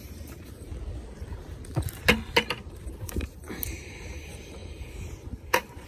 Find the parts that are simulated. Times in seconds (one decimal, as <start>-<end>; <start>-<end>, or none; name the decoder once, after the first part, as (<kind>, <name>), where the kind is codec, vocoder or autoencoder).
0.0-0.7 (vocoder, BigVGAN v2); 3.0-5.9

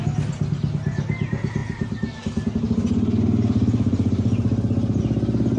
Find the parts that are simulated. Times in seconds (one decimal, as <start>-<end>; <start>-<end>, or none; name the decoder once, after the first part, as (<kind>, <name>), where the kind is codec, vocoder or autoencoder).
none